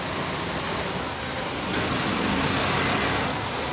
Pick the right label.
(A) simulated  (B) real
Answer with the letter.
B